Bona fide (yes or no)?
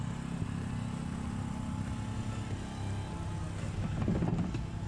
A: yes